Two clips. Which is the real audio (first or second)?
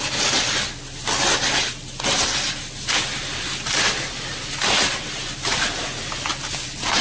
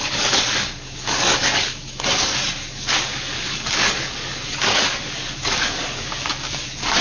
first